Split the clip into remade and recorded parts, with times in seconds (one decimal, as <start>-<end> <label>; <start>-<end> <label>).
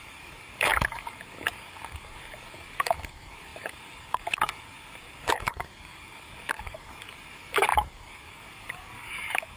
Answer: 0.0-9.6 remade